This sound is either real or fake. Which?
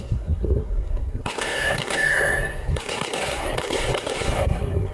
fake